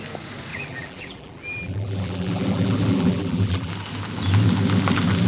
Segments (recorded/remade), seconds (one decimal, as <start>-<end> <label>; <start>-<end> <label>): 0.0-0.5 recorded; 0.5-3.7 remade; 3.7-5.3 recorded